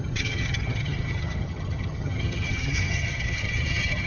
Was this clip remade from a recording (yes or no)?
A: yes